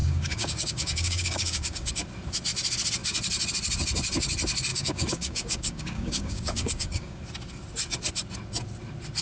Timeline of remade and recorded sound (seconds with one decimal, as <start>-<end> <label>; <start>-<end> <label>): 0.0-1.9 remade; 1.9-4.7 recorded; 4.7-7.2 remade; 7.2-9.2 recorded